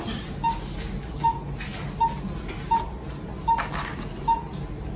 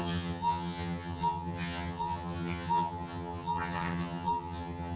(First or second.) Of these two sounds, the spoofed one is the second